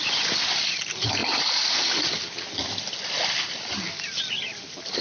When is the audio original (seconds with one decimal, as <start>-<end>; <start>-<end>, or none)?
0.0-5.0